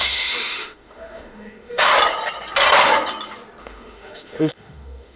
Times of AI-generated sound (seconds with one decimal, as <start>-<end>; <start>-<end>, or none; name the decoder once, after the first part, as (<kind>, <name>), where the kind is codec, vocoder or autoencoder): 0.0-1.9 (autoencoder, DAC-VAE); 3.6-5.2